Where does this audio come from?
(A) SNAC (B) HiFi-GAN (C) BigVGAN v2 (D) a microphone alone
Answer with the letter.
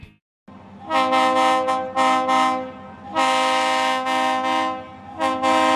D